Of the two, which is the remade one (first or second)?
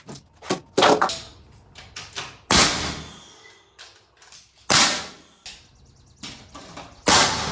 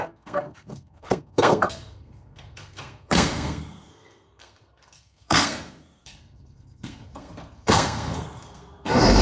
second